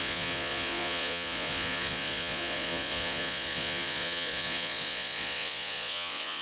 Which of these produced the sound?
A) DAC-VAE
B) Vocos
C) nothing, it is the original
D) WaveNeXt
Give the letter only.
B